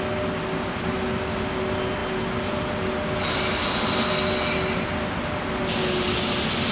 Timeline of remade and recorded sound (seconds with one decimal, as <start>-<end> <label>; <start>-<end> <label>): 0.0-6.7 recorded